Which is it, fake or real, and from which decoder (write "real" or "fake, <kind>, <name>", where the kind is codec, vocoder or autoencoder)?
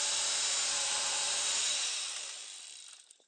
fake, vocoder, BigVGAN v2